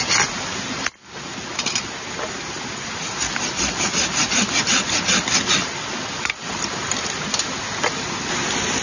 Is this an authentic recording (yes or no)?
yes